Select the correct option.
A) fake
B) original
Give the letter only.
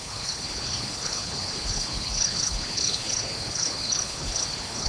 A